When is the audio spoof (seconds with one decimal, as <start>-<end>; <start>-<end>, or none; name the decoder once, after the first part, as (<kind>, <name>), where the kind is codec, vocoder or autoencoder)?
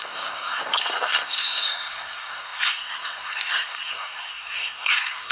0.0-5.3 (codec, SNAC)